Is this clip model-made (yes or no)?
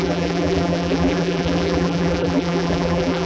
yes